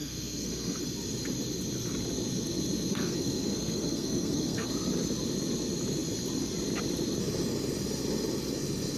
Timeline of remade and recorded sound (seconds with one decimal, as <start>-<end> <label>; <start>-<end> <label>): 0.0-0.8 remade; 0.8-2.9 recorded; 2.9-4.7 remade; 4.7-9.0 recorded